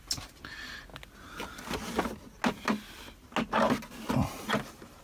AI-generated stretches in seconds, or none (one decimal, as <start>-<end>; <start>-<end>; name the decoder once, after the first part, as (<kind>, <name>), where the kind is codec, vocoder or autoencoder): none